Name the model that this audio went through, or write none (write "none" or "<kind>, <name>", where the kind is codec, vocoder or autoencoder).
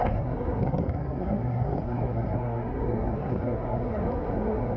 codec, SNAC